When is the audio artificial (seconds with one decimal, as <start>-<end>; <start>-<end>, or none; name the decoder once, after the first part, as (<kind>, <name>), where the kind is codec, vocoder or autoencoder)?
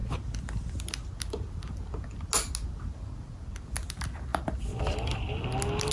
none